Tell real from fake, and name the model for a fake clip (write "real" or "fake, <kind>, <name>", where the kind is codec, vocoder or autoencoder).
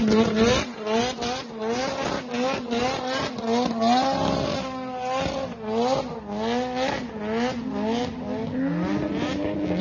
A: real